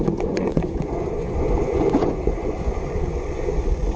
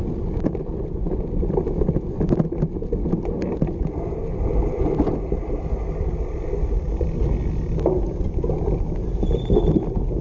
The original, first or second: second